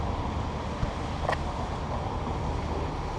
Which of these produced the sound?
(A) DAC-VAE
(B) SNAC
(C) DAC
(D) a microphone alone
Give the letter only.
D